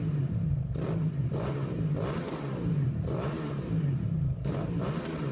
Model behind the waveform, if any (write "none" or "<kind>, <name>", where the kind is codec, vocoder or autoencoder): vocoder, BigVGAN v2